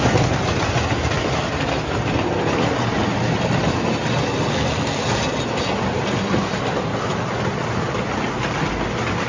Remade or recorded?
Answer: recorded